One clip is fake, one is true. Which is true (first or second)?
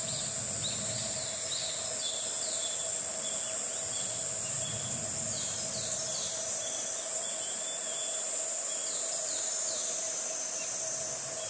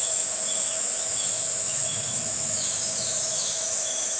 first